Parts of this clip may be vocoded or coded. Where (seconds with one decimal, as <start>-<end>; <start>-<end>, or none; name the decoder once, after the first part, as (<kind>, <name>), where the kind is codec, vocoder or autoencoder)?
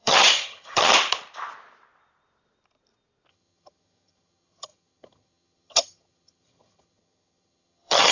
0.0-0.9 (vocoder, HiFi-GAN); 3.3-8.1